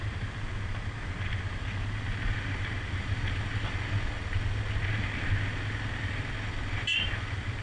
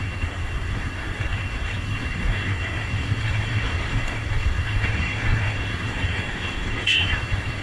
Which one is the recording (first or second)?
first